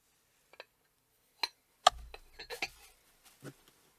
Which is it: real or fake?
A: real